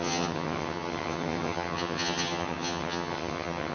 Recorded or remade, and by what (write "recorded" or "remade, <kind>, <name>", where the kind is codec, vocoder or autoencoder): remade, vocoder, HiFi-GAN